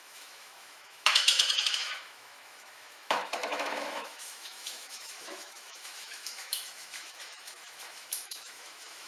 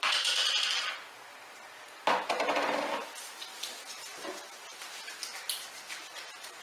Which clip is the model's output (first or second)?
first